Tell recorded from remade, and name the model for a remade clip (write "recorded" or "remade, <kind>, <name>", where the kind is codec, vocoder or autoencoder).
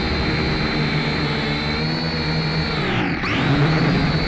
recorded